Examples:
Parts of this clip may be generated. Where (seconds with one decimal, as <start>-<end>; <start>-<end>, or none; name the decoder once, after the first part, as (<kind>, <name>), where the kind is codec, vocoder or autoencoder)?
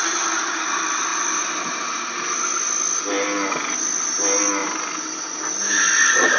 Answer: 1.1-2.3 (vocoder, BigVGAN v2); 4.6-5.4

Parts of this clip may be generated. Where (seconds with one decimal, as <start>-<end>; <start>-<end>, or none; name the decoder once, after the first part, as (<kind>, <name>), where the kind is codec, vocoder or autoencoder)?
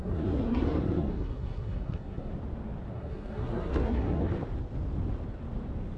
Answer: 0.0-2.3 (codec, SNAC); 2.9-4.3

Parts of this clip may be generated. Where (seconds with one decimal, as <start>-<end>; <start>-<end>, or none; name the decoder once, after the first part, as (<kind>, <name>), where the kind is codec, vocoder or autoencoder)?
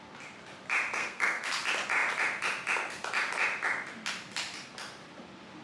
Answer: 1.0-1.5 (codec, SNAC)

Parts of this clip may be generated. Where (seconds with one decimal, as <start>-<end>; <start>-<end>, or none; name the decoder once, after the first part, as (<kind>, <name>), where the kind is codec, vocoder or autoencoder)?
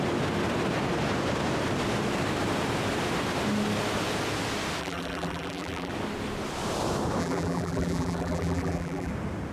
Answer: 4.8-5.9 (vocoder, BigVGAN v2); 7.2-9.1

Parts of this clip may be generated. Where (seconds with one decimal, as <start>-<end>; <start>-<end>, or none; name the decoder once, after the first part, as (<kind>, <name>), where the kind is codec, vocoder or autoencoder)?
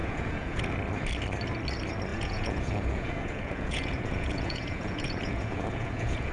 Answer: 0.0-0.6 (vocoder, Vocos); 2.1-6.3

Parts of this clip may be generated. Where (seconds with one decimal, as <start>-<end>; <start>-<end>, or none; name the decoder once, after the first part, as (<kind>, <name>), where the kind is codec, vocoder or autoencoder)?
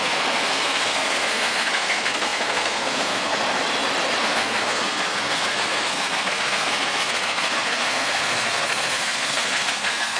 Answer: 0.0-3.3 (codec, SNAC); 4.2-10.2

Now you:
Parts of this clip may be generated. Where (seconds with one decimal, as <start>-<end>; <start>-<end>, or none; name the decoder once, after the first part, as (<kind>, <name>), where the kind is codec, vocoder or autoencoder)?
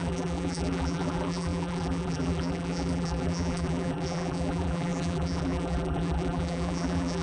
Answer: 0.0-7.2 (vocoder, BigVGAN v2)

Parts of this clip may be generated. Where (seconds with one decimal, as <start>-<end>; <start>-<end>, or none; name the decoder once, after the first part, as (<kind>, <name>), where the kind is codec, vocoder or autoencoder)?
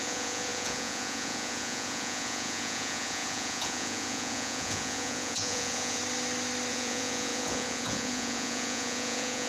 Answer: 0.0-6.0 (vocoder, Vocos); 6.7-9.5